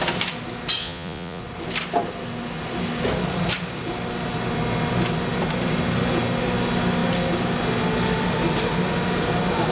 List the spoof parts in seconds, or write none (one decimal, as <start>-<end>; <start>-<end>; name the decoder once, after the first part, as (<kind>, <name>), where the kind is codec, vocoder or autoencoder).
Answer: 0.8-1.4 (vocoder, Vocos)